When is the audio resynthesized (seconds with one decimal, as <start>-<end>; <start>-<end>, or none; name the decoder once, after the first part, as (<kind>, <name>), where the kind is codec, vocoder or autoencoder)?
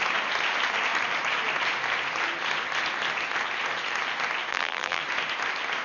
4.5-5.0 (vocoder, BigVGAN v2)